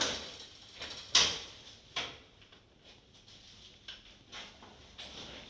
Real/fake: real